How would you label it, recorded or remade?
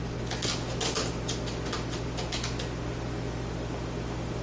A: recorded